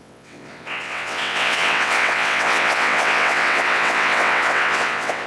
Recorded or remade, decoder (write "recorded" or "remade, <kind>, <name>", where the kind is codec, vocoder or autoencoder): remade, vocoder, WaveNeXt